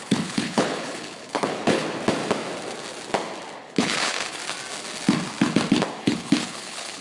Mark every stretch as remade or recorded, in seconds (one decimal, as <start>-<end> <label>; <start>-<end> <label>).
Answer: 0.0-1.8 remade; 1.8-3.6 recorded; 3.6-4.4 remade; 4.4-6.0 recorded; 6.0-7.0 remade